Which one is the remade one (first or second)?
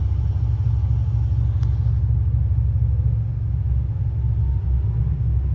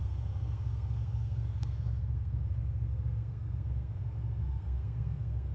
second